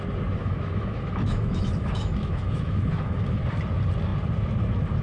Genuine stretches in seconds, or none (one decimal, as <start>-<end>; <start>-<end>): 0.0-0.4; 3.4-5.0